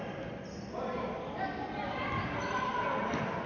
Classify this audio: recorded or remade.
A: remade